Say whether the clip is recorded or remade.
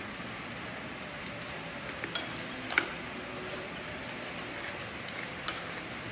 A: recorded